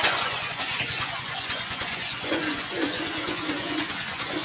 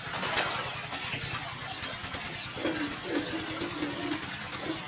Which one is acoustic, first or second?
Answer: second